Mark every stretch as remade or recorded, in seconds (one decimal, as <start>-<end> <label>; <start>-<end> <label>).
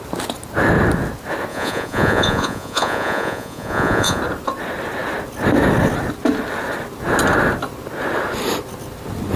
0.0-1.5 recorded; 1.5-4.2 remade; 4.2-9.4 recorded